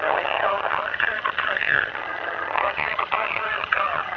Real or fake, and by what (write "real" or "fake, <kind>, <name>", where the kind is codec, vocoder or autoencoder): fake, vocoder, HiFi-GAN